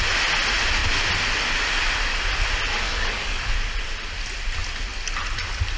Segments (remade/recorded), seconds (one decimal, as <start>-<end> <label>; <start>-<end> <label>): 0.0-2.7 recorded; 2.7-3.5 remade; 3.5-5.8 recorded